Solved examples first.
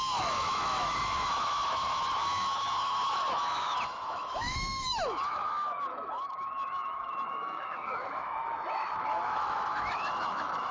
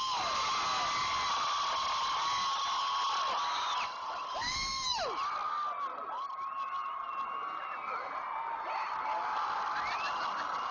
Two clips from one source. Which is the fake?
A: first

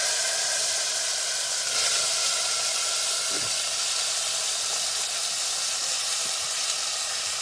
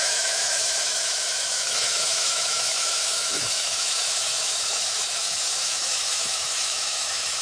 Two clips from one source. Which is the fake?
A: second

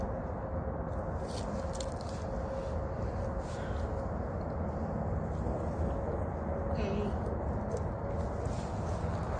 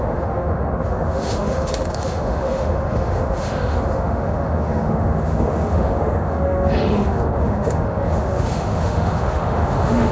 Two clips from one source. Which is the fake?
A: second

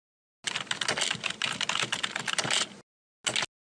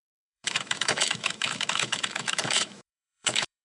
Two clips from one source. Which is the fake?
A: second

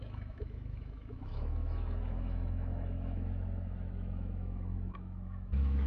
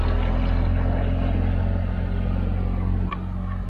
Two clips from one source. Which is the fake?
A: first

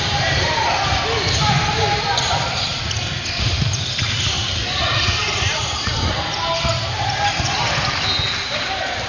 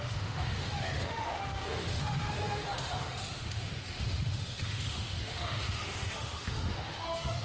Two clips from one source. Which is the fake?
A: second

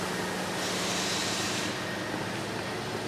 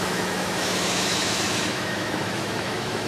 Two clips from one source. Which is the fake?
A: second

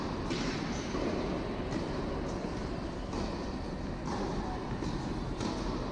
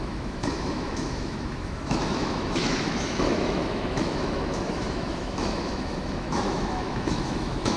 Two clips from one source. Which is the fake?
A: second